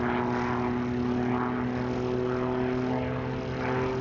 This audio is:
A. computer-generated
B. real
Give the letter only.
B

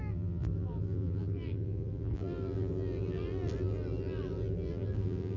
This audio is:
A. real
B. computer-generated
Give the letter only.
B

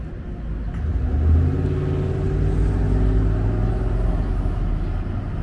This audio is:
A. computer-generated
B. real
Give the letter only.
B